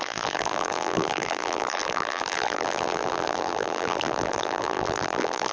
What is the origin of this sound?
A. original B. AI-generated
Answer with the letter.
B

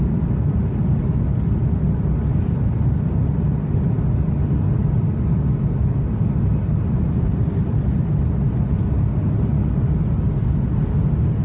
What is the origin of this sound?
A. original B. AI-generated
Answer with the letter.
A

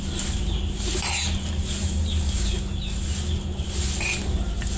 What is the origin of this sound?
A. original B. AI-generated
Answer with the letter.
A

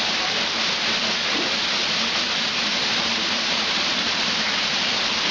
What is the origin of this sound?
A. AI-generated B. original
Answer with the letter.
A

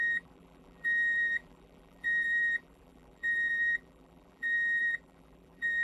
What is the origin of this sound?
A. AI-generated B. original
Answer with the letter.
A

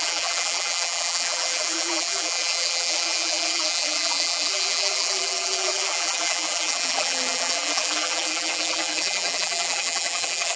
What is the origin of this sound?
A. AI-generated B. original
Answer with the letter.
A